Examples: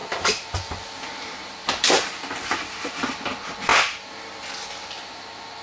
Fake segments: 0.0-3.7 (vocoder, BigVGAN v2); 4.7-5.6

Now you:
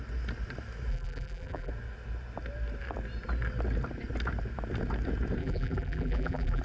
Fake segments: 0.9-1.7 (vocoder, BigVGAN v2); 5.4-6.6